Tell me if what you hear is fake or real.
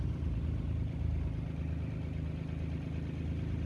real